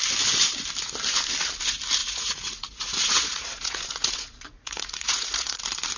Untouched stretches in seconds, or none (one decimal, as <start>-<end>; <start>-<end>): 0.0-2.0; 5.6-6.0